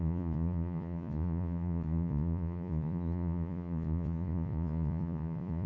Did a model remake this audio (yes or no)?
yes